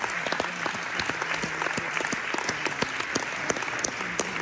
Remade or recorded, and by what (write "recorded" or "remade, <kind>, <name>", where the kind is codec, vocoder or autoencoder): recorded